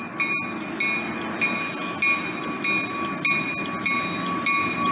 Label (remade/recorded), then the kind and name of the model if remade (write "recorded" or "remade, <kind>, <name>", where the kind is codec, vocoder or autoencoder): recorded